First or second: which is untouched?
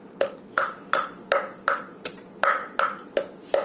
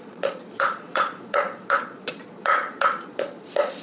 first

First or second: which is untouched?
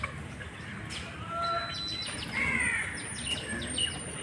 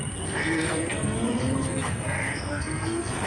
first